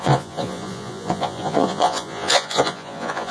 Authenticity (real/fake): fake